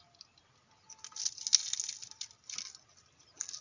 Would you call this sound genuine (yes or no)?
yes